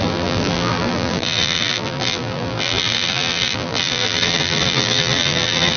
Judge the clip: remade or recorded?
remade